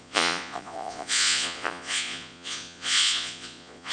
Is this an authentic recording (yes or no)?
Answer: no